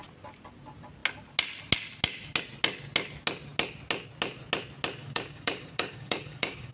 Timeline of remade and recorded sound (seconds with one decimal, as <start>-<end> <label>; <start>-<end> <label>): 0.0-5.0 recorded; 5.0-6.7 remade